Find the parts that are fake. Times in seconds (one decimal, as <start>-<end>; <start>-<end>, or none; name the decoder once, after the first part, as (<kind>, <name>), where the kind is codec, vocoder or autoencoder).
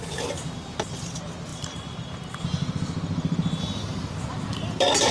none